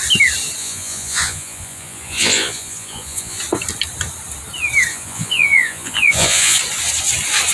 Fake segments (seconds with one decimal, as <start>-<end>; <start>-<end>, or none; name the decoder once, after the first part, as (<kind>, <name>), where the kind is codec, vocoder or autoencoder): 0.6-3.4 (vocoder, Vocos); 4.9-6.6